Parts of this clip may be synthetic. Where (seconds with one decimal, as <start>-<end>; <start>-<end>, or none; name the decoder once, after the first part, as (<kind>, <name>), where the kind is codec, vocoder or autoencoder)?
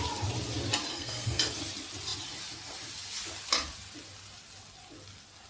0.9-1.4 (codec, SNAC)